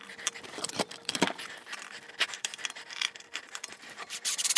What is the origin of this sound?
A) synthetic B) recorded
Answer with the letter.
A